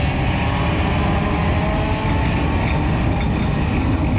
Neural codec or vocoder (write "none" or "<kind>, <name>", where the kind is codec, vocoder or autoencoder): none